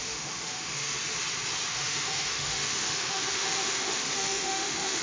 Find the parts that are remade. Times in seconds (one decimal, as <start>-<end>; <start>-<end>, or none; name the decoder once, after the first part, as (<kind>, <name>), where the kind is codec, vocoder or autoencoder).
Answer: 0.0-1.0 (autoencoder, DAC-VAE); 1.7-5.0